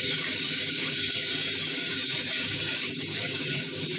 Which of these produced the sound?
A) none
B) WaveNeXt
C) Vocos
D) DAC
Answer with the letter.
D